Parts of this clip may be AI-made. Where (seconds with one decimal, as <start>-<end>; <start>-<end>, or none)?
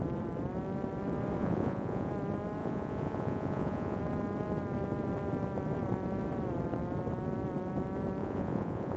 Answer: 1.4-2.1; 2.6-4.0; 8.2-9.0